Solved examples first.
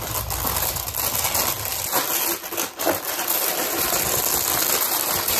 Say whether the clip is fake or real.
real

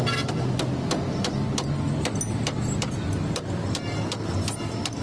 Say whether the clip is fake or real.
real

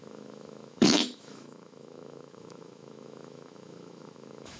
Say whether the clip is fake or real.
fake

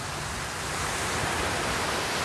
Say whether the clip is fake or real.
real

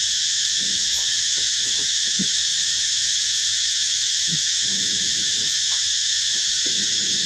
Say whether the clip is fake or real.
fake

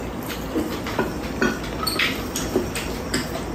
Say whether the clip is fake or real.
real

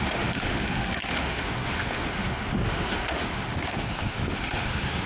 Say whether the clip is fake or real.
fake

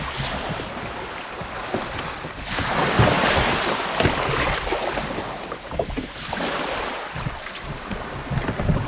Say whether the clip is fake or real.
real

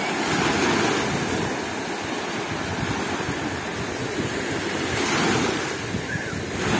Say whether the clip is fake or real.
real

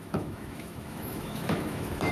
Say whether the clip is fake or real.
fake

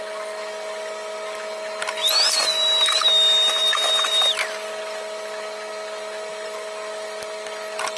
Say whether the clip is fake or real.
real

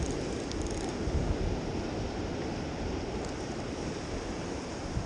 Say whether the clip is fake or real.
real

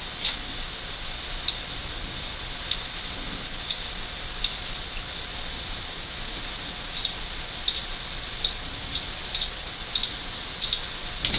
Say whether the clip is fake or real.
real